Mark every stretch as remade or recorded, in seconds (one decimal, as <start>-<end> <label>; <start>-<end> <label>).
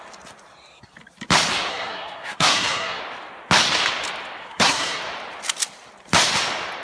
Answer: 0.0-1.7 recorded; 1.7-3.0 remade; 3.0-4.4 recorded; 4.4-5.0 remade; 5.0-6.8 recorded